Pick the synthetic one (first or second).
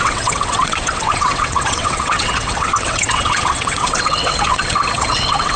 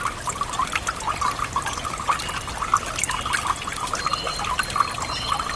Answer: first